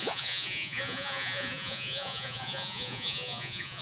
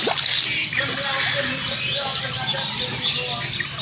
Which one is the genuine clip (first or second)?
second